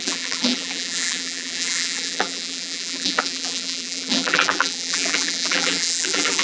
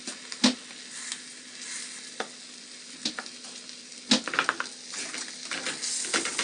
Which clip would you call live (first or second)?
second